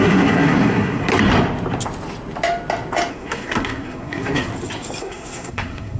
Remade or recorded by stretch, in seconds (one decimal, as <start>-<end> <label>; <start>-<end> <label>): 0.0-1.1 remade; 1.1-3.1 recorded; 3.1-4.5 remade; 4.5-5.0 recorded; 5.0-6.0 remade